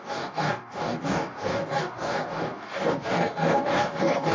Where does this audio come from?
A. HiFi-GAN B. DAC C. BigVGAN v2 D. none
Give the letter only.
B